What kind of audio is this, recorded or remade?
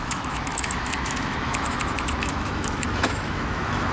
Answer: remade